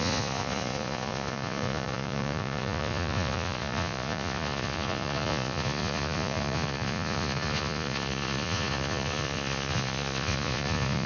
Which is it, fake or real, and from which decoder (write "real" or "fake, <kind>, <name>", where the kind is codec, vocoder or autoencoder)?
fake, vocoder, Vocos